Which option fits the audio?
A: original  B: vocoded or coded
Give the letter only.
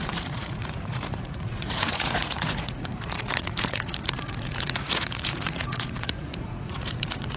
B